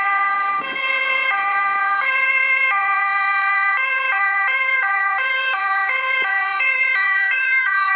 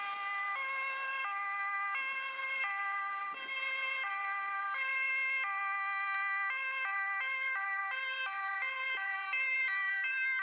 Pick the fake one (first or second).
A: first